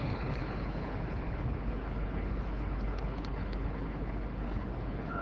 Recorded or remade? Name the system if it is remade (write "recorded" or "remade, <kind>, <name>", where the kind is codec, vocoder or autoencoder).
remade, codec, HILCodec